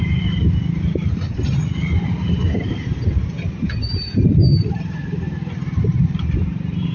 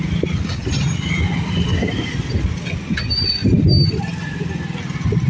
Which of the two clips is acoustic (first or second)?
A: second